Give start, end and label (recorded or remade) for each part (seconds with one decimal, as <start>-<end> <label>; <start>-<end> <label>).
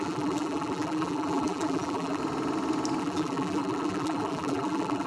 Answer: 0.0-2.2 remade; 2.2-3.0 recorded; 3.0-5.1 remade